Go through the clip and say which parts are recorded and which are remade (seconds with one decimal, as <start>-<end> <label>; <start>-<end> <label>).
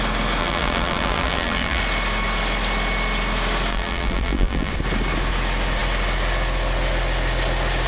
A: 0.0-0.4 recorded; 0.4-1.8 remade; 1.8-3.7 recorded; 3.7-4.7 remade; 4.7-7.9 recorded